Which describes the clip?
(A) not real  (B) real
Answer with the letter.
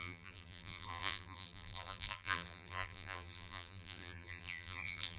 A